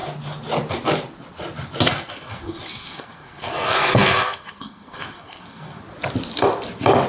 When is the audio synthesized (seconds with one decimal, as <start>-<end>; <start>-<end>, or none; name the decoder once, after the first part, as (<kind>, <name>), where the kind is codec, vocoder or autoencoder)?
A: 1.9-5.8 (codec, SNAC)